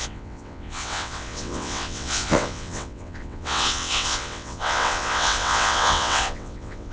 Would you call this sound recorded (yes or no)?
no